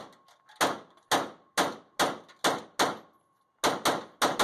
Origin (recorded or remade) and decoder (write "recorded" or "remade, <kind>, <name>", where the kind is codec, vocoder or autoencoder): recorded